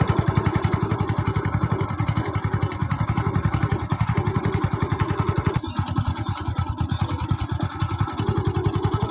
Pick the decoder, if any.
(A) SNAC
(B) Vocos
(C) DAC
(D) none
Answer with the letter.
D